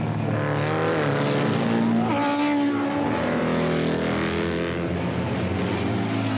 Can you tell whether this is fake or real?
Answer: real